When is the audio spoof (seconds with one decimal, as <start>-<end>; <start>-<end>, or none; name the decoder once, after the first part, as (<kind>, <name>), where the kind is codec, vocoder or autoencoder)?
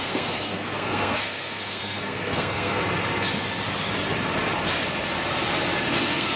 0.0-2.8 (codec, SNAC); 5.9-6.4